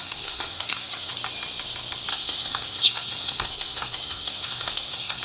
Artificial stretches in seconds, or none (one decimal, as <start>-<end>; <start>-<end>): 0.0-1.1; 2.1-5.2